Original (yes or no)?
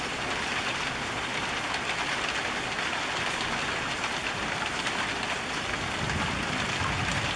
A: yes